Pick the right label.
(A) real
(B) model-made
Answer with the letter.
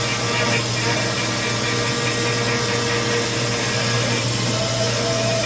A